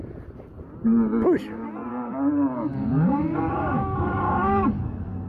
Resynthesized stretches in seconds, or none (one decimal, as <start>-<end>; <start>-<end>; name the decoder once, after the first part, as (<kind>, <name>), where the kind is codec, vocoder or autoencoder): 1.9-5.3 (codec, DAC)